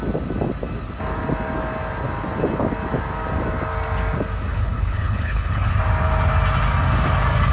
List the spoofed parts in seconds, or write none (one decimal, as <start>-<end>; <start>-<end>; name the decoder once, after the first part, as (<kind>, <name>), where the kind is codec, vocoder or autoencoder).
4.5-5.7 (codec, HILCodec)